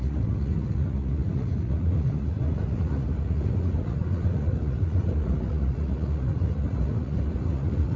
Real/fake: fake